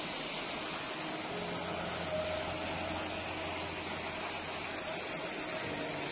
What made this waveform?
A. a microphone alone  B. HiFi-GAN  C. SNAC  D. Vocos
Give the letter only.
A